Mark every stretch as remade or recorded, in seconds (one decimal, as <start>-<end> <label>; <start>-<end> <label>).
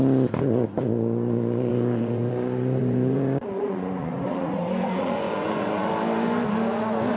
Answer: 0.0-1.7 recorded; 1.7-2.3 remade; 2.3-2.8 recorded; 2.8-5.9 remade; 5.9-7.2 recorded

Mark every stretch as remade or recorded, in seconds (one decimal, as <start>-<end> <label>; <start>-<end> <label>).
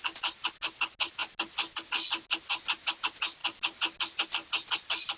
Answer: 0.0-5.2 recorded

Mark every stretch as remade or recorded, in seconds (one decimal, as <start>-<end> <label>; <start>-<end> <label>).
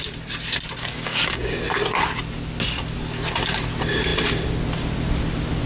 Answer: 0.0-0.9 recorded; 0.9-1.6 remade; 1.6-5.7 recorded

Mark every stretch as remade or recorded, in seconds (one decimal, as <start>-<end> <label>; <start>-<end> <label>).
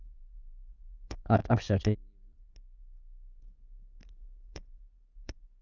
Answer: 0.0-1.4 remade; 1.4-4.1 recorded; 4.1-5.6 remade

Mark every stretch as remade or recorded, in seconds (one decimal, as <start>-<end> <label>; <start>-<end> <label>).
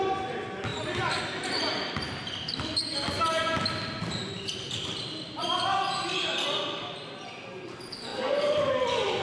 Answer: 0.0-9.2 recorded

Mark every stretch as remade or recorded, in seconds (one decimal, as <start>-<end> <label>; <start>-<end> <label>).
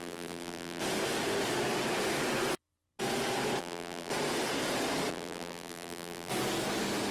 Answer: 0.0-0.8 remade; 0.8-3.6 recorded; 3.6-4.1 remade; 4.1-5.1 recorded; 5.1-6.3 remade; 6.3-7.1 recorded